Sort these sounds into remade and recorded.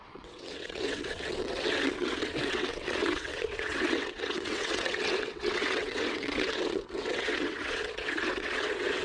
remade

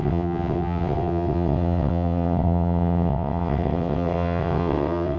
remade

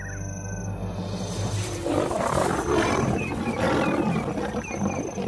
recorded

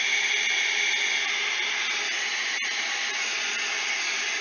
recorded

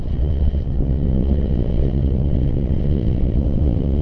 remade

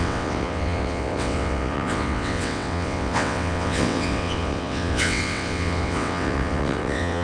remade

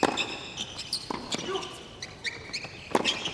recorded